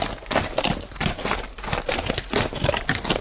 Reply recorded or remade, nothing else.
recorded